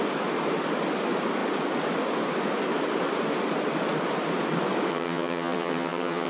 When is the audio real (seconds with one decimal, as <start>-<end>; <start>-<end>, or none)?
0.0-4.9